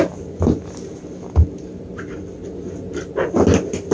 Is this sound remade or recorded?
recorded